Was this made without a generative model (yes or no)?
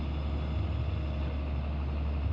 yes